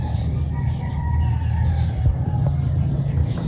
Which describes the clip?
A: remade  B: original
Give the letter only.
B